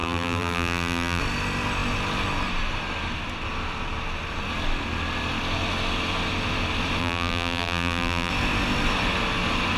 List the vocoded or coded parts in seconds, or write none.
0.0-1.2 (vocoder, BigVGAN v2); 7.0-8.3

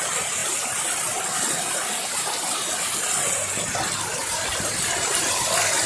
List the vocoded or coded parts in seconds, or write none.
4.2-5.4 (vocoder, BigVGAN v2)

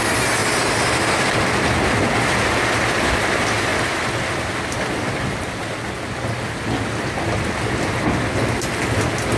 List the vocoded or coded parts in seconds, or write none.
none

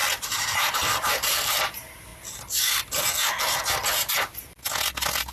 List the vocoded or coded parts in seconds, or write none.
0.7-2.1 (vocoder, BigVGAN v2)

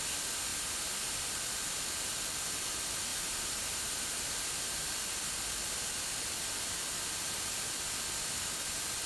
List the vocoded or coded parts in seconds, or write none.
0.5-1.4 (vocoder, BigVGAN v2); 3.1-4.5

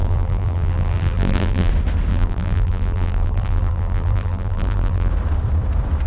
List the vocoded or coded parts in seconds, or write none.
0.0-1.7 (vocoder, BigVGAN v2); 2.1-5.1

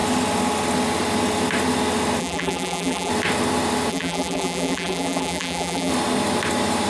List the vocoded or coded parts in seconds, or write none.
2.2-3.1 (vocoder, BigVGAN v2); 3.9-5.9

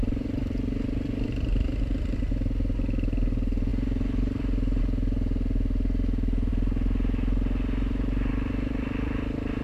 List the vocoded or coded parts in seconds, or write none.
0.0-6.5 (vocoder, BigVGAN v2); 8.3-9.6